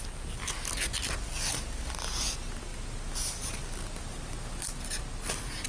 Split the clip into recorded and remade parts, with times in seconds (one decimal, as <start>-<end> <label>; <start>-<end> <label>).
0.0-5.7 recorded